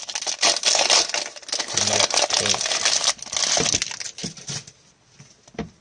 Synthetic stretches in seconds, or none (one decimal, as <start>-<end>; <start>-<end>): none